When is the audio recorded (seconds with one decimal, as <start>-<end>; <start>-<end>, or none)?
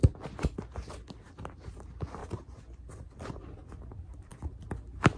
0.0-5.2